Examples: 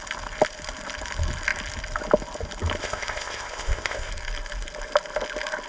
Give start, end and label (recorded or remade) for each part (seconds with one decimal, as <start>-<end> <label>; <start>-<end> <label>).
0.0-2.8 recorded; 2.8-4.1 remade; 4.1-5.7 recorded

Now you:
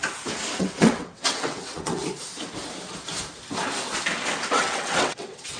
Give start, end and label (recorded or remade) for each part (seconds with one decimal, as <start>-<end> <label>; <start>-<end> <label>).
0.0-0.6 recorded; 0.6-2.0 remade; 2.0-4.5 recorded; 4.5-5.6 remade

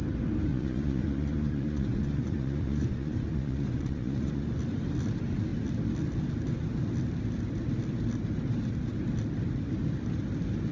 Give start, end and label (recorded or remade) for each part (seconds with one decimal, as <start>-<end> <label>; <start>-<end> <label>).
0.0-0.5 recorded; 0.5-4.5 remade; 4.5-10.7 recorded